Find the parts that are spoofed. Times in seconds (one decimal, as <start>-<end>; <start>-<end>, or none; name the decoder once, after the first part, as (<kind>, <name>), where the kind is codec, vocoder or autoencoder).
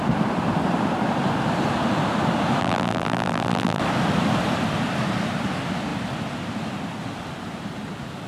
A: 2.6-3.8 (vocoder, BigVGAN v2)